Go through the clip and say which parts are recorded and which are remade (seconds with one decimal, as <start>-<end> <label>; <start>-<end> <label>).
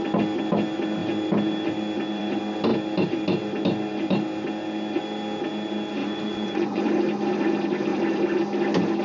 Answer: 0.0-6.0 recorded; 6.0-6.9 remade; 6.9-9.0 recorded